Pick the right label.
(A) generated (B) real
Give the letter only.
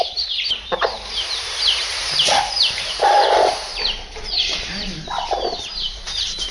A